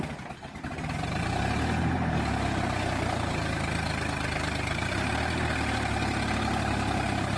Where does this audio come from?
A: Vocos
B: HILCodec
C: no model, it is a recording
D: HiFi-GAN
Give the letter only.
C